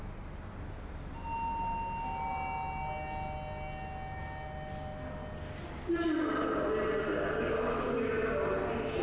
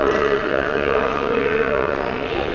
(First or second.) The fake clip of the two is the second